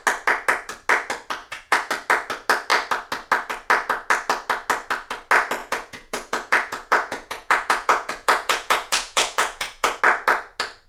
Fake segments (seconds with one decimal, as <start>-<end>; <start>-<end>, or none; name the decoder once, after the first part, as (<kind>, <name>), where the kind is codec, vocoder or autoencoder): 1.4-1.9 (vocoder, Vocos); 5.6-10.0